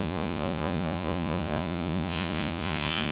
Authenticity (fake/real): fake